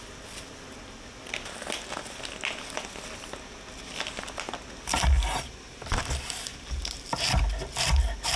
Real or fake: real